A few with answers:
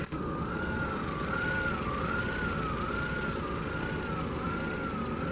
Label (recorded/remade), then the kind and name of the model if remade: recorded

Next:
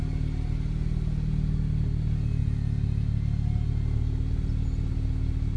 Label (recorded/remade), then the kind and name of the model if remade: recorded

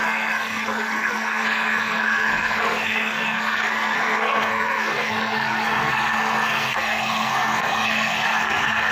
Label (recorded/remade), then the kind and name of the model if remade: remade, codec, SNAC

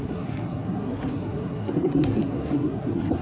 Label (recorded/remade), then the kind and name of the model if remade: remade, codec, SNAC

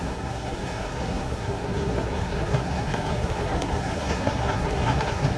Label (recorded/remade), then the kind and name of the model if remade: remade, codec, SNAC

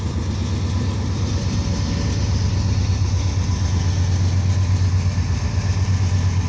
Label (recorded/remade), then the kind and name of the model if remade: recorded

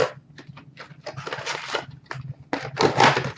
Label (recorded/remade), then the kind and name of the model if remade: recorded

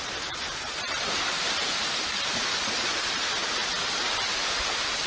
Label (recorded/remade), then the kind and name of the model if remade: recorded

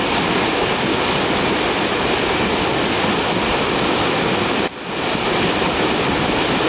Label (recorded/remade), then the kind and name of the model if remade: recorded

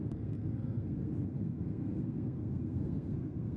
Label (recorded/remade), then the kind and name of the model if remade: remade, codec, SNAC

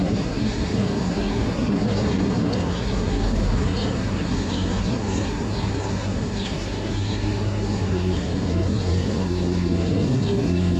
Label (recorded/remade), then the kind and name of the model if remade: remade, codec, SNAC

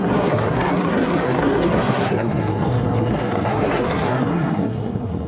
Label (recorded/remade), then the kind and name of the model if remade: remade, codec, SNAC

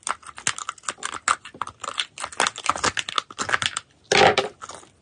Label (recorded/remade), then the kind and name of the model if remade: recorded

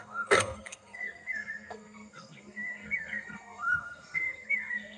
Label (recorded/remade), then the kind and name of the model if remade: remade, codec, SNAC